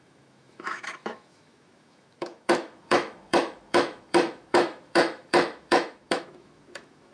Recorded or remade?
remade